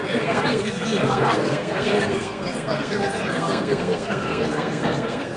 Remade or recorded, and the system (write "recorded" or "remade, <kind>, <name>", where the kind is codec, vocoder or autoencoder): remade, codec, SNAC